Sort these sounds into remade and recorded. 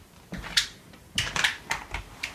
recorded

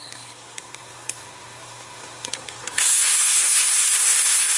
remade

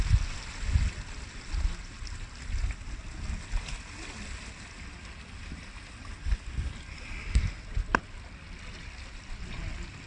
recorded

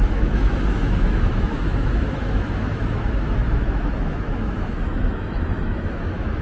remade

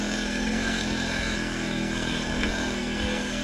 remade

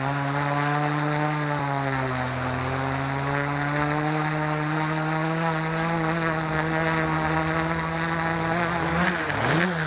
recorded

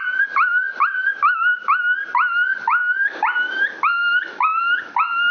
recorded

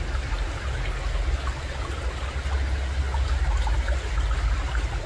recorded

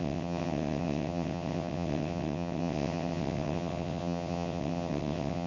remade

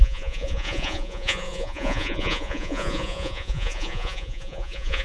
remade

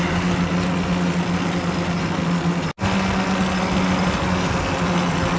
recorded